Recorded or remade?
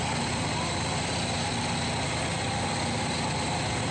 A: recorded